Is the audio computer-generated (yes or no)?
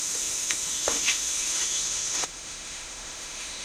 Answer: yes